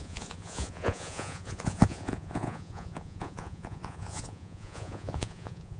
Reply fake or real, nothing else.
fake